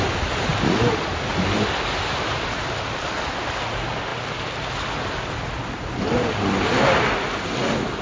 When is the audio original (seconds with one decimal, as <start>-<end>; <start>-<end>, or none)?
0.0-8.0